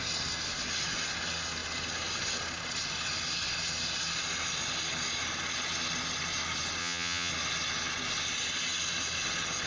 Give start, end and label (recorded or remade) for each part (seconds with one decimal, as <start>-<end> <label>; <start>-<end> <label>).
0.0-6.8 recorded; 6.8-7.3 remade; 7.3-9.7 recorded